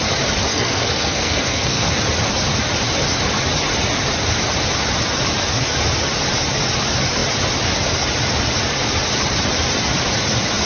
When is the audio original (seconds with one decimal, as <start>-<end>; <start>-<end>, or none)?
0.0-0.5; 1.9-10.7